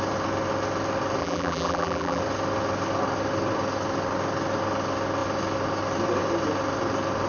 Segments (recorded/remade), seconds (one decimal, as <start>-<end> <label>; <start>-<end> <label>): 0.0-1.2 recorded; 1.2-2.2 remade; 2.2-7.3 recorded